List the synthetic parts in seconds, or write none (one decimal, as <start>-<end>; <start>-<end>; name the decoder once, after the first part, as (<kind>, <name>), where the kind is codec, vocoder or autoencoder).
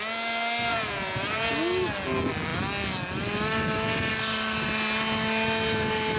0.7-1.5 (vocoder, Vocos)